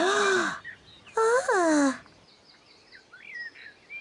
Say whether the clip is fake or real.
real